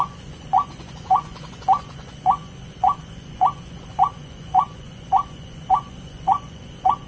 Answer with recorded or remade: remade